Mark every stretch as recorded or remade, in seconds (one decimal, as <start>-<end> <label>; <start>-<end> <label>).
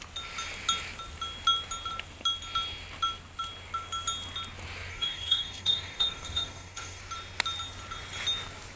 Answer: 0.0-4.9 recorded; 4.9-7.0 remade; 7.0-8.8 recorded